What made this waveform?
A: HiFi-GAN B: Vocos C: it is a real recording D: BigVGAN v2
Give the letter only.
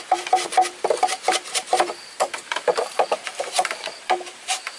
D